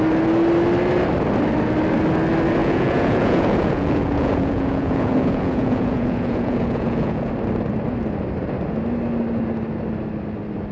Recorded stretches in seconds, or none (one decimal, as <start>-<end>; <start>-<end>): 0.0-2.6; 7.3-10.7

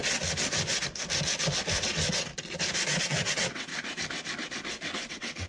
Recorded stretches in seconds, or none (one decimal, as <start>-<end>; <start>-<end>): 0.0-1.7; 2.3-3.0; 3.7-5.1

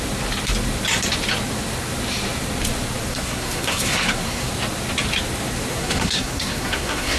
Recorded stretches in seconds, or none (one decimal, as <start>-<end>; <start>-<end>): 0.0-3.1; 4.5-5.7